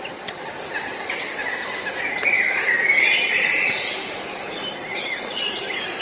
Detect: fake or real fake